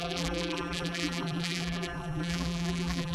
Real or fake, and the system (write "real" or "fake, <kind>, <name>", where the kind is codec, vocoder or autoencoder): fake, vocoder, BigVGAN v2